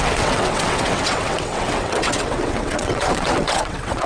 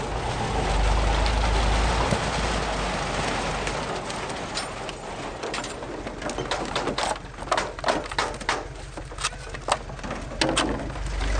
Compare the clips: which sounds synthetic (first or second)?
first